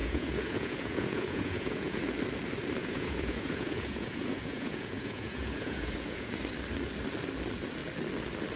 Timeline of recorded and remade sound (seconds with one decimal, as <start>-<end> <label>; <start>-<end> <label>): 0.0-2.0 remade; 2.0-2.8 recorded; 2.8-6.3 remade; 6.3-8.6 recorded